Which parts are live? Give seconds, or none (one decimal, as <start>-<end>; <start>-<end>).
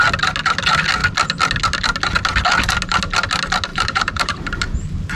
0.0-3.7; 4.4-5.2